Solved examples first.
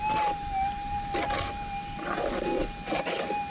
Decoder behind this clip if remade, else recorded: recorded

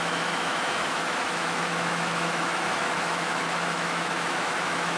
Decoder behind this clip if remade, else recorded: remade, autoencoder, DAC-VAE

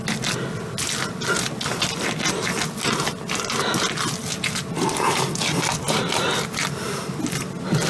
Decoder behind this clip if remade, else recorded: recorded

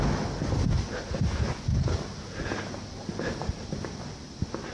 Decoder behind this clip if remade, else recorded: recorded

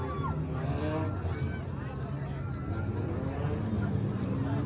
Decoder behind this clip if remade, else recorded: recorded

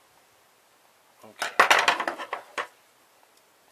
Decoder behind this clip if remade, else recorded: recorded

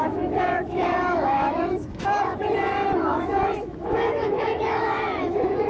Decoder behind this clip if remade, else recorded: remade, autoencoder, DAC-VAE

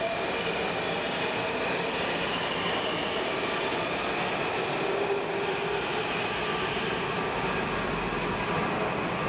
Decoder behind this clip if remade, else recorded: recorded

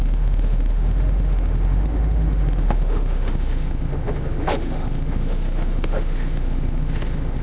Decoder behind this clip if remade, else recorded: remade, autoencoder, DAC-VAE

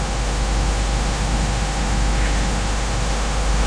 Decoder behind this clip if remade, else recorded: remade, autoencoder, DAC-VAE